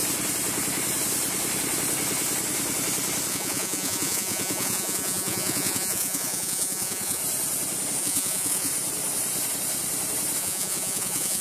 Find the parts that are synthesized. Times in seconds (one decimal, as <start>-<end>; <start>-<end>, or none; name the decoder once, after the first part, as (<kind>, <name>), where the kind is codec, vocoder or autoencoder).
3.3-7.2 (vocoder, Vocos); 8.0-8.7; 10.4-11.4